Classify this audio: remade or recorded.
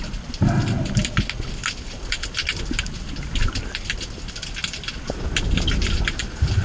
recorded